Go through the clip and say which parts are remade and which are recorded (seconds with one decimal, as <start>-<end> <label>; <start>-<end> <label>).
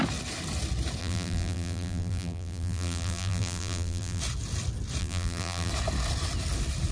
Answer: 0.0-1.0 recorded; 1.0-4.2 remade; 4.2-5.0 recorded; 5.0-5.7 remade; 5.7-6.9 recorded